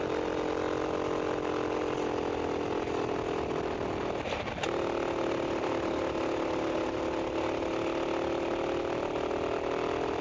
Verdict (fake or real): real